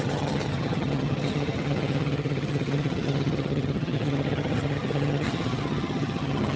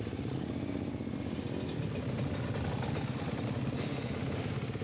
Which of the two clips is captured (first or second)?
second